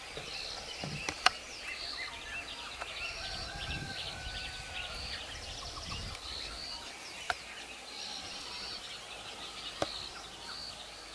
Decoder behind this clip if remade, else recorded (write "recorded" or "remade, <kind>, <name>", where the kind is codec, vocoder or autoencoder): recorded